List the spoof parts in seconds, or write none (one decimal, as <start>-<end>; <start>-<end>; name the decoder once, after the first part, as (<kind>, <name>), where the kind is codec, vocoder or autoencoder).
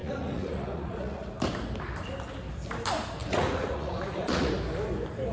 0.0-1.3 (vocoder, Vocos); 3.2-4.5